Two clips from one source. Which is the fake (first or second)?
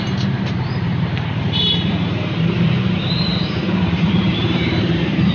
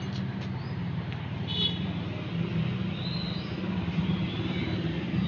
first